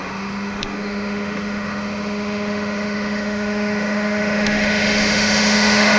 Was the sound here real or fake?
fake